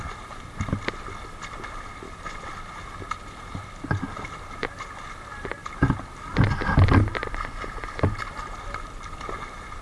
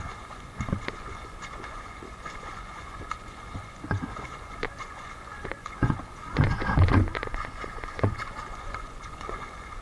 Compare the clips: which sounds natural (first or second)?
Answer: first